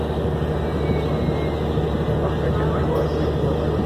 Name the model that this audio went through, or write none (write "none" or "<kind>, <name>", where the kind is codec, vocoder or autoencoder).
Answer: none